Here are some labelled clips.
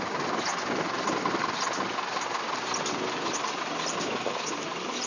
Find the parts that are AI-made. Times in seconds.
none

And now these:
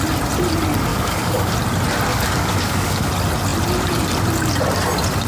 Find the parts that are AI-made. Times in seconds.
0.9-1.5 (codec, DAC); 2.1-3.1

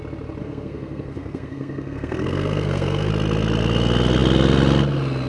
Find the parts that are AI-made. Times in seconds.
0.4-3.1 (codec, SNAC)

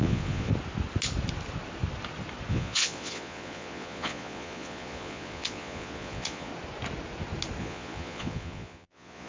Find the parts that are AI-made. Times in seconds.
0.0-0.5 (vocoder, Vocos); 2.5-6.5; 7.6-9.3